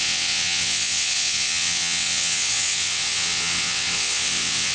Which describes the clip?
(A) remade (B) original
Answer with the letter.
A